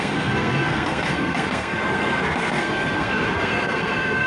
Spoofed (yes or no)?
yes